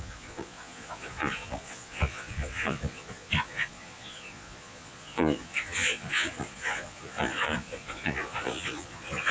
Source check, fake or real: fake